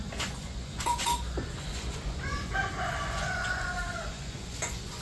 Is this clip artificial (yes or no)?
yes